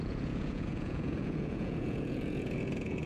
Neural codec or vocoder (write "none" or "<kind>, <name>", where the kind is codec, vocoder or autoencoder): vocoder, Vocos